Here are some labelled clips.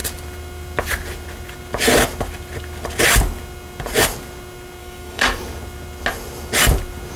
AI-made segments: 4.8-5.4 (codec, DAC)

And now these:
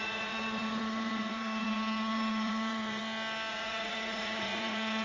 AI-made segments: 0.0-3.0 (vocoder, Vocos); 3.5-5.0